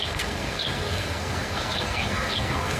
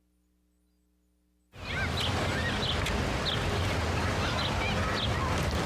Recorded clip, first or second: second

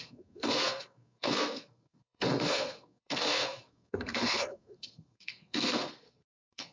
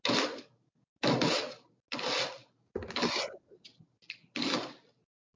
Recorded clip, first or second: second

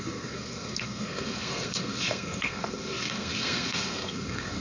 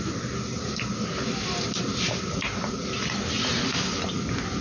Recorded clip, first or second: second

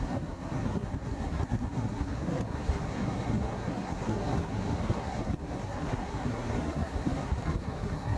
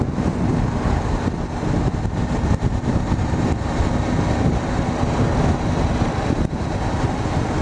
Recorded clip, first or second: second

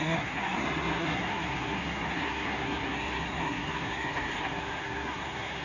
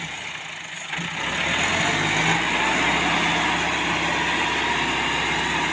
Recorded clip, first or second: second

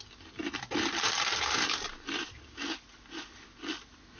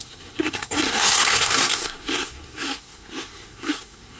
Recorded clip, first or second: first